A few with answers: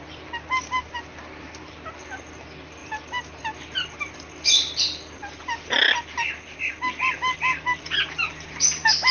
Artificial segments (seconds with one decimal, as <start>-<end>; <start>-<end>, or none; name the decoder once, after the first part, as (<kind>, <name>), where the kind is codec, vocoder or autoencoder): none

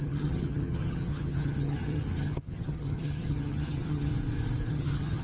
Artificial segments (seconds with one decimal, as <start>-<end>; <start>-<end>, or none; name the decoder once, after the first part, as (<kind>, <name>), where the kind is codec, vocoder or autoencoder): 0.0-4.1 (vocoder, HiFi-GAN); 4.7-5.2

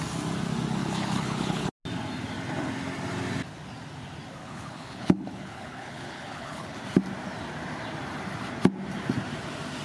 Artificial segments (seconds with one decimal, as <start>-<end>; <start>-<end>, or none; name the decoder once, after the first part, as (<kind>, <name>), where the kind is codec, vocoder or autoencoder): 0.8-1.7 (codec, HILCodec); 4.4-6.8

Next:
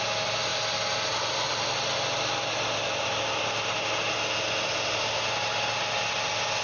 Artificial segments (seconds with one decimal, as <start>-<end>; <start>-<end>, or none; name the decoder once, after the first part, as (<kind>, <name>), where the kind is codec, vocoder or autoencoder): none

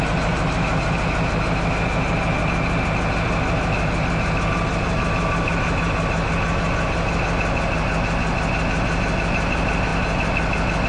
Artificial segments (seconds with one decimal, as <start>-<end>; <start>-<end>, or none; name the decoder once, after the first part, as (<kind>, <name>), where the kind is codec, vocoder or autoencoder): none

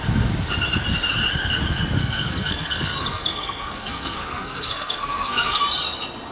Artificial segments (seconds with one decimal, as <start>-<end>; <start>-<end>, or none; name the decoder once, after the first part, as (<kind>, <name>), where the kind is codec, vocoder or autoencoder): 2.0-5.6 (codec, SNAC)